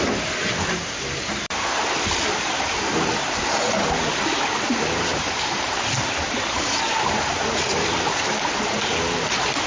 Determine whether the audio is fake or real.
fake